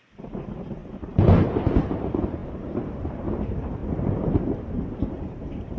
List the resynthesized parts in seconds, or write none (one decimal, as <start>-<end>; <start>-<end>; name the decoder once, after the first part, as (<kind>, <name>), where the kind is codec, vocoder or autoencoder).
0.0-0.8 (vocoder, BigVGAN v2); 1.8-5.8